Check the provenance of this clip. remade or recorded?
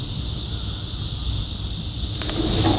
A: recorded